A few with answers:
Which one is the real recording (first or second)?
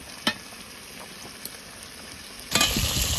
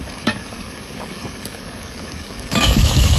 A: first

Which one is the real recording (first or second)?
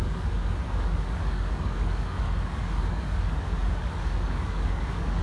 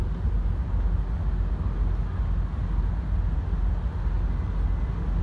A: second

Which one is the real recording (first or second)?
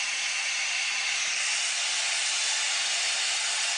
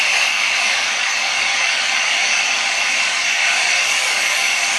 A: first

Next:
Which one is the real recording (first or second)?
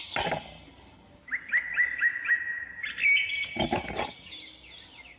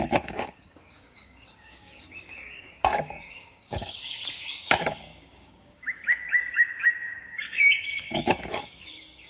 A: first